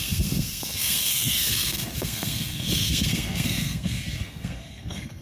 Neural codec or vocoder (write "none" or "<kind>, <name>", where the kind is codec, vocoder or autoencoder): codec, SNAC